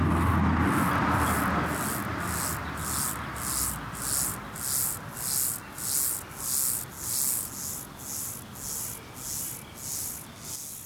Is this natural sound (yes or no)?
yes